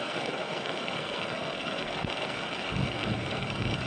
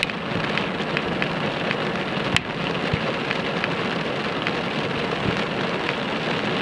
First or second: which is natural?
second